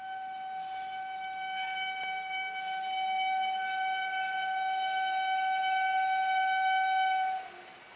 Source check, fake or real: real